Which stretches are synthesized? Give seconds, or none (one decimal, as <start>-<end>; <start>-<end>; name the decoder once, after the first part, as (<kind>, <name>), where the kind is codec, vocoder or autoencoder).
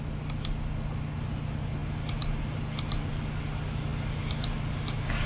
none